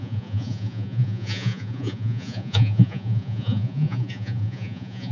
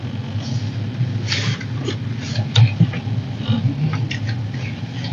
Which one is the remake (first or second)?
first